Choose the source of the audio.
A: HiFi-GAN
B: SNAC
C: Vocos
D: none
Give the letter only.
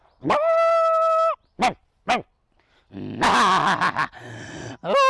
D